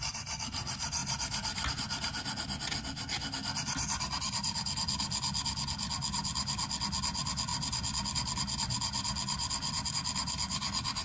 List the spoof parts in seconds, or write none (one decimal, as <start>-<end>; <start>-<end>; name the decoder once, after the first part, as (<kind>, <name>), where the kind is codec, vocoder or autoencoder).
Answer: none